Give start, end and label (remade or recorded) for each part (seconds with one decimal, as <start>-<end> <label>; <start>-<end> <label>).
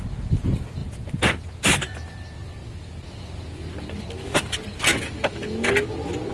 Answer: 0.0-4.9 recorded; 4.9-5.7 remade; 5.7-6.3 recorded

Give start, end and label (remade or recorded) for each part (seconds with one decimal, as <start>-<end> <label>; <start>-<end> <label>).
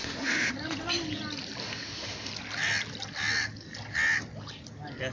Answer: 0.0-0.5 remade; 0.5-1.6 recorded; 1.6-2.3 remade; 2.3-5.1 recorded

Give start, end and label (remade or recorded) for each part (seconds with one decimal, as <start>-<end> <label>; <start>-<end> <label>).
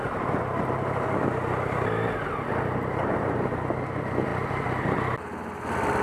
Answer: 0.0-6.0 recorded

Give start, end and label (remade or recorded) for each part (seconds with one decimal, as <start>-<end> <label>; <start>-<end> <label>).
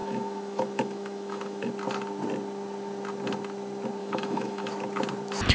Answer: 0.0-1.7 remade; 1.7-4.0 recorded; 4.0-4.7 remade; 4.7-5.5 recorded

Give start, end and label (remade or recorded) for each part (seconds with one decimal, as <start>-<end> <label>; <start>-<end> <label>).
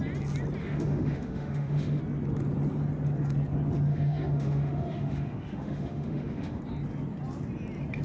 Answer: 0.0-0.6 recorded; 0.6-2.0 remade; 2.0-3.9 recorded; 3.9-6.6 remade; 6.6-8.0 recorded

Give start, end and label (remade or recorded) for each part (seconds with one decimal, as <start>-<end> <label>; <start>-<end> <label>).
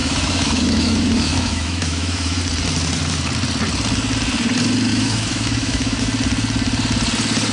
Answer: 0.0-2.4 remade; 2.4-4.9 recorded; 4.9-6.0 remade; 6.0-7.5 recorded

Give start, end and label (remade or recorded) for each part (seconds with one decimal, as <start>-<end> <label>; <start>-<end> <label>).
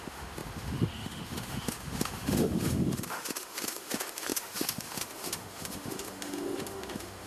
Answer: 0.0-7.3 remade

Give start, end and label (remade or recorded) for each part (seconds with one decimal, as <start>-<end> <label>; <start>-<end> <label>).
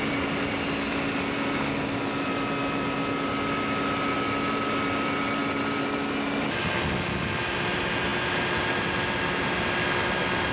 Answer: 0.0-10.5 recorded